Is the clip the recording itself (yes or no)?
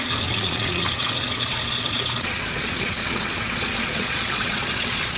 no